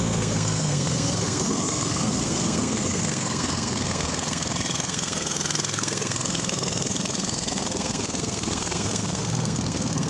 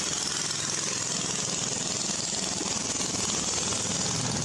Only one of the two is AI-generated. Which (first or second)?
first